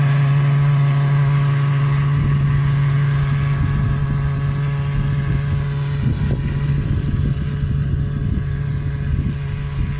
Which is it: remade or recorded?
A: recorded